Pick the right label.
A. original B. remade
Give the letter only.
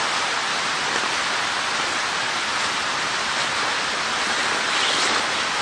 A